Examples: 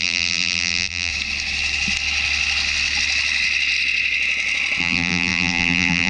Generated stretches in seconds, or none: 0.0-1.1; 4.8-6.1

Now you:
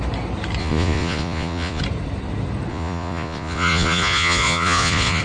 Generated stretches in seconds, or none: 0.6-1.8; 2.7-5.2

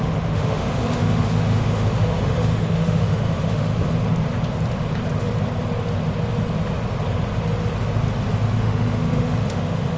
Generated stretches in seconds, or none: 0.0-3.7; 8.6-10.0

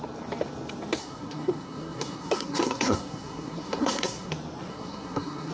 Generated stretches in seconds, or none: 1.0-4.3; 4.7-5.5

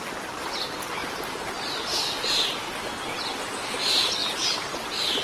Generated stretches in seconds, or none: 1.0-2.6; 4.2-5.2

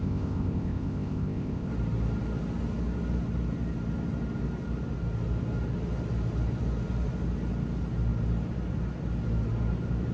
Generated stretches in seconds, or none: 0.0-1.7

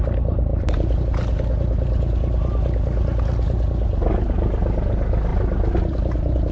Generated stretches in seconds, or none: 0.5-1.0; 5.3-6.5